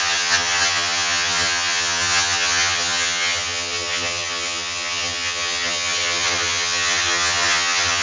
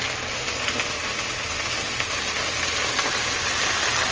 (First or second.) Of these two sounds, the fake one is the first